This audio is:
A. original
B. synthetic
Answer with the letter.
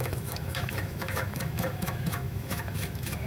B